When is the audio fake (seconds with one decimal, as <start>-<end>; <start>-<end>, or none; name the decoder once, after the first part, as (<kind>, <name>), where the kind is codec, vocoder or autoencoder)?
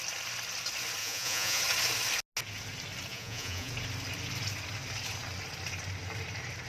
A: 1.0-1.6 (vocoder, Vocos); 3.1-3.7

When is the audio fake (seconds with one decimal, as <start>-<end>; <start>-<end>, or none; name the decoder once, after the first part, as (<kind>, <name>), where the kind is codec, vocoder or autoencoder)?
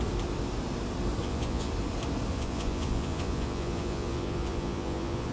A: 1.2-1.7 (vocoder, Vocos); 2.3-5.3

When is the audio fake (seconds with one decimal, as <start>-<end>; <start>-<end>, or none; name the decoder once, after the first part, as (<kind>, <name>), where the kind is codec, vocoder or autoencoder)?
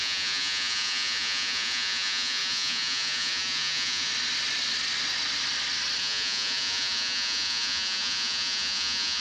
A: 0.0-4.1 (vocoder, Vocos); 6.0-9.2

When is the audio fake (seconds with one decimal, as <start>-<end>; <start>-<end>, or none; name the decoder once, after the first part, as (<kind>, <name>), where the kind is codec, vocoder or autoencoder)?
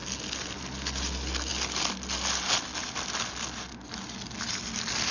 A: none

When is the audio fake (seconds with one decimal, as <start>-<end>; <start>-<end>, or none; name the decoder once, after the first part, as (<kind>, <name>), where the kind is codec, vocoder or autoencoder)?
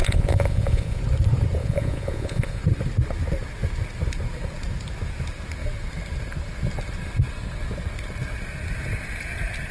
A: 0.0-1.0 (vocoder, Vocos); 1.6-2.6